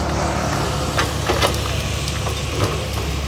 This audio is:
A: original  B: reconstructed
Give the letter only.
A